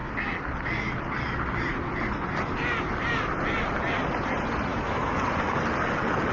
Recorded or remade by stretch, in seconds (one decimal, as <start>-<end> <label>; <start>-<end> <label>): 0.0-4.7 recorded; 4.7-5.2 remade; 5.2-6.3 recorded